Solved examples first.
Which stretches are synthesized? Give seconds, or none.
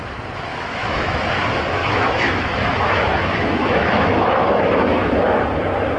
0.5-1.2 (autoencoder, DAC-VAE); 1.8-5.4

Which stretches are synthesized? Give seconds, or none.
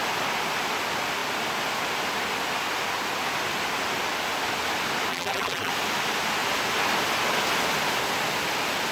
5.1-5.7 (vocoder, BigVGAN v2)